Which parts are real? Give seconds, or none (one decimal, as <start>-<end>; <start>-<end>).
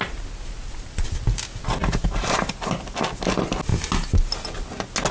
0.0-1.8; 2.6-5.1